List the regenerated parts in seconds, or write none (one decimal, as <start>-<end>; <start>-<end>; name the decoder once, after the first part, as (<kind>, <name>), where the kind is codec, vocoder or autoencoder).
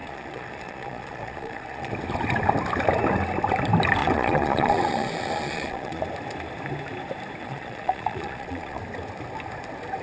0.0-1.9 (vocoder, Vocos); 4.0-6.0; 7.4-8.8